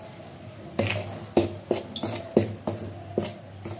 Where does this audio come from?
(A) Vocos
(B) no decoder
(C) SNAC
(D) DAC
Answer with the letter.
B